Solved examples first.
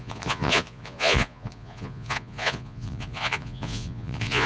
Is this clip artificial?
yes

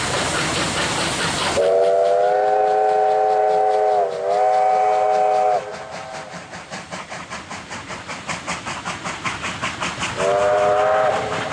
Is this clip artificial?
no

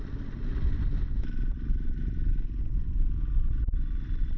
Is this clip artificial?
no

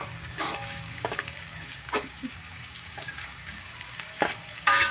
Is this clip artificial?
yes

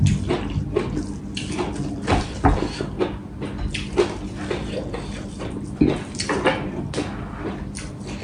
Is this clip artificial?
no